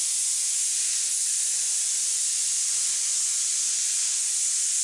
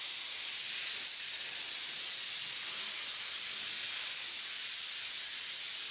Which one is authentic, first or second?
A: second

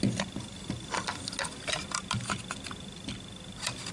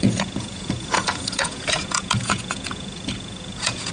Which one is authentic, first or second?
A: first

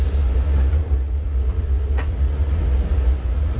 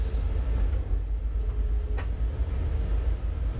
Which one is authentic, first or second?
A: second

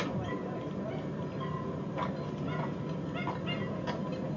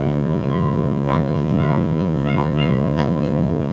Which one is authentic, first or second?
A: first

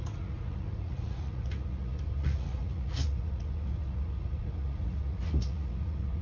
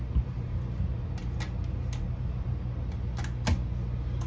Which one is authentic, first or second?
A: second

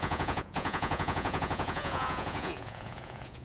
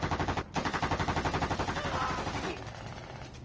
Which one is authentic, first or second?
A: second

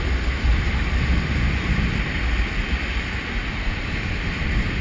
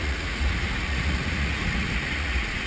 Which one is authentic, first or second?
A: first